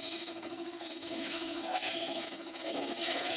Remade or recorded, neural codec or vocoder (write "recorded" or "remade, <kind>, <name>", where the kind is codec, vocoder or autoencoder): remade, codec, SNAC